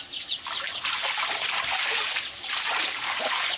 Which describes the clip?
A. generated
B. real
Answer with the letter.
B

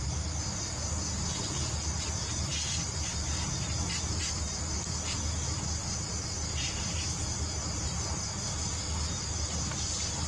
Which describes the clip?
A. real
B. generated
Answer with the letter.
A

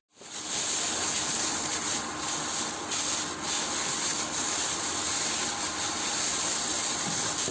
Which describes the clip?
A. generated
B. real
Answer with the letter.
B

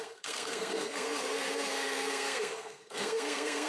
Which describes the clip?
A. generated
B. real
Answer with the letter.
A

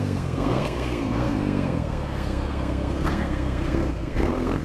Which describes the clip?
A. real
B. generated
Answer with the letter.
B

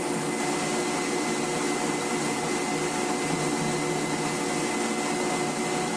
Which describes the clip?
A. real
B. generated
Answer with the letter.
A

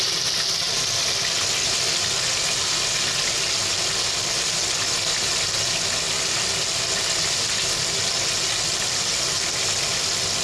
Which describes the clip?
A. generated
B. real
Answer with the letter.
B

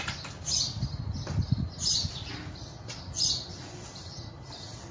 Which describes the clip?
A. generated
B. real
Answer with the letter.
B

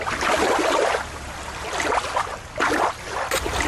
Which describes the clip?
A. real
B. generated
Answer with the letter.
A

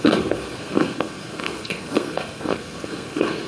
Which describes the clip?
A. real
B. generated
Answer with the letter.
B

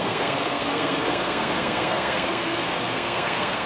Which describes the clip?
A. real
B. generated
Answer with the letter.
B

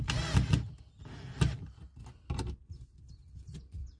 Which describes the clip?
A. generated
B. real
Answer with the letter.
B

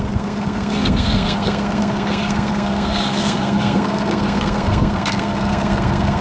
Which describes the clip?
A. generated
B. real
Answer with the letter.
A